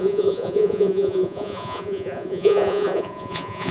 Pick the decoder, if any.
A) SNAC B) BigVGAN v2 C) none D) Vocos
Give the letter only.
D